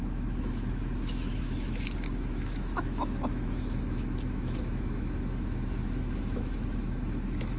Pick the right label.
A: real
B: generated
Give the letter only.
B